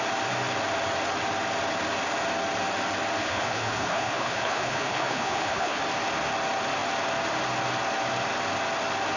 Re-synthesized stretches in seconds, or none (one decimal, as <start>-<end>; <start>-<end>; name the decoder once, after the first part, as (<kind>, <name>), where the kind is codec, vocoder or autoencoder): 3.2-5.8 (codec, HILCodec)